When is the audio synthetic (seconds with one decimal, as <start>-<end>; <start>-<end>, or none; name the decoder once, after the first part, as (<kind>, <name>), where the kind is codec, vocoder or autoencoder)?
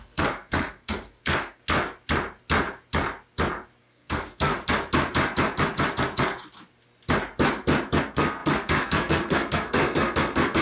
0.0-1.6 (codec, SNAC); 3.8-4.5; 8.0-10.6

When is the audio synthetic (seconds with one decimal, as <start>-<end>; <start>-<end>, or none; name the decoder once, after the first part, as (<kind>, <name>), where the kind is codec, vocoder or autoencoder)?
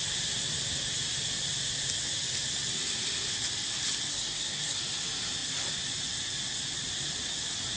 4.1-4.8 (codec, SNAC)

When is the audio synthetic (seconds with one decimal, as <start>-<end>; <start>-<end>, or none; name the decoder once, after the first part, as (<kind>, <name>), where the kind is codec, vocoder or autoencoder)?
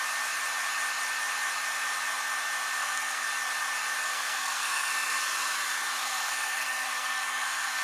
2.8-3.3 (codec, SNAC); 4.1-5.2; 6.0-7.8